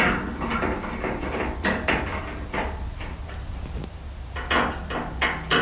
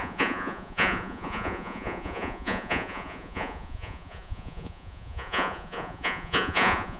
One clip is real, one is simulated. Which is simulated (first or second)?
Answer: second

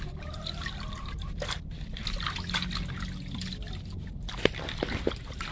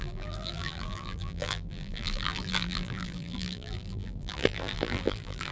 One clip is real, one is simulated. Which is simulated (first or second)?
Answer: second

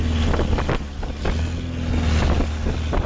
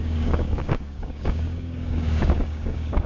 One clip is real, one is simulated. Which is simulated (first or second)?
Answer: second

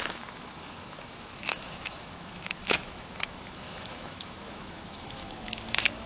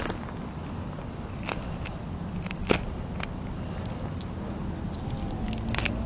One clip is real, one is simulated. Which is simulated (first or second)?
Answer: first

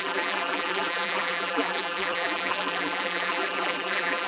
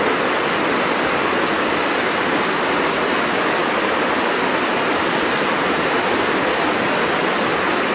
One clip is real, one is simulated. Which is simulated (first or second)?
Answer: first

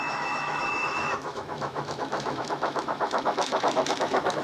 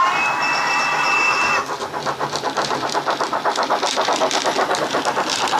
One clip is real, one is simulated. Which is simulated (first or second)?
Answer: first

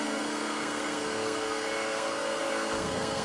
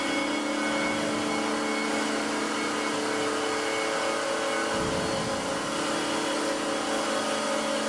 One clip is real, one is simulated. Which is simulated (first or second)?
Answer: first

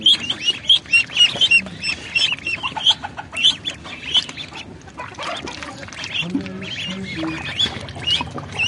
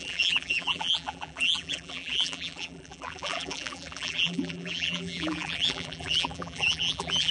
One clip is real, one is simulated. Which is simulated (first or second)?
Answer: second